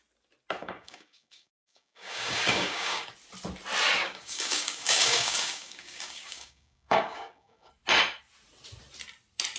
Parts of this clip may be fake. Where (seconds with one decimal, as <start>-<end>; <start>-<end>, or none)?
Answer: 0.6-3.1; 4.0-7.7